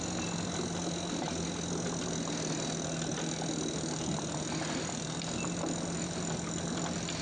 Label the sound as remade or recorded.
recorded